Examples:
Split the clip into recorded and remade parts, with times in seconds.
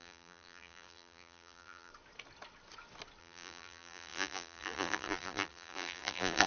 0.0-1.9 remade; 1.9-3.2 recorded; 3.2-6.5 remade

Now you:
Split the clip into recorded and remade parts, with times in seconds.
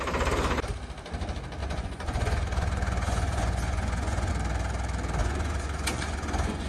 0.0-1.6 recorded; 1.6-4.3 remade; 4.3-5.2 recorded; 5.2-6.7 remade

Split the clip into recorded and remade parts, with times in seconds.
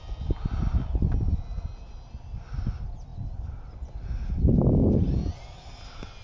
0.0-6.2 recorded